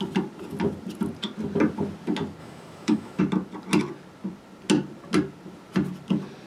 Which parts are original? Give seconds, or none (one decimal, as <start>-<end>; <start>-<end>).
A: 0.0-2.4; 3.2-6.5